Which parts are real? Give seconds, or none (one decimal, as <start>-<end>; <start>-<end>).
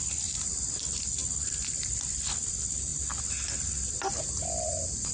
0.0-5.1